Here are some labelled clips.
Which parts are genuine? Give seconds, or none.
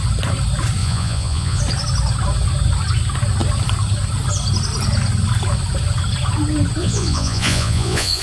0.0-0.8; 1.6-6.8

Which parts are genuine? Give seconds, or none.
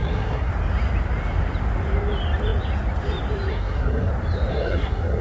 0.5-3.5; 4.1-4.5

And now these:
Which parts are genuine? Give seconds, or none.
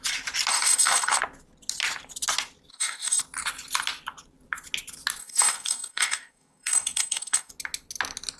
0.0-0.5; 1.2-2.7; 3.2-5.2; 7.5-8.4